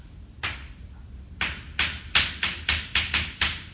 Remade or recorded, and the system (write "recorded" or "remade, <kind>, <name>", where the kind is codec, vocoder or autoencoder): recorded